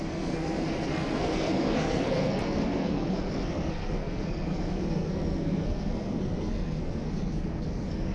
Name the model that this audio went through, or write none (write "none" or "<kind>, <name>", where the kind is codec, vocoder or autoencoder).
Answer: codec, SNAC